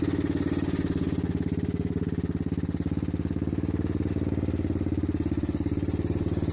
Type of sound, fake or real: real